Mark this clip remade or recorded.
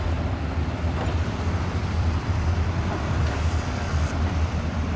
remade